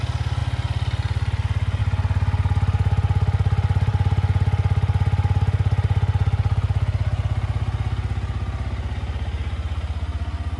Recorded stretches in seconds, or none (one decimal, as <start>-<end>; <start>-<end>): 0.0-10.6